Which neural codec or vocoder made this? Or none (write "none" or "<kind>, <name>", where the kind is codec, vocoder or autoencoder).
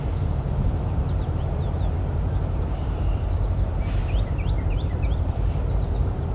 vocoder, BigVGAN v2